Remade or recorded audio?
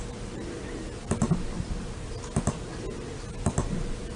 recorded